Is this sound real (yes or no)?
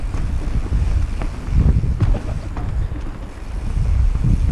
yes